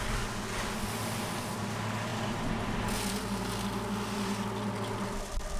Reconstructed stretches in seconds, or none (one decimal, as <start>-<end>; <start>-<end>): none